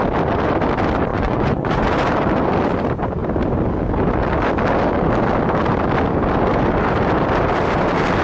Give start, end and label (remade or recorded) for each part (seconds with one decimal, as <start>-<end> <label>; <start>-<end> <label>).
0.0-1.1 recorded; 1.1-1.8 remade; 1.8-8.2 recorded